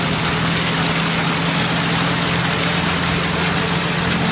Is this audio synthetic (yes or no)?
no